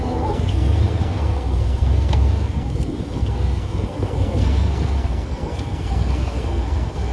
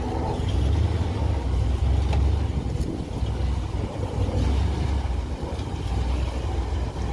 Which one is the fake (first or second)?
first